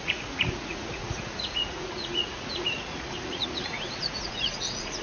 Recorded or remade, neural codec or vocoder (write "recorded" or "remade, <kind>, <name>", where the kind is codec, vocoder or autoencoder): remade, vocoder, Vocos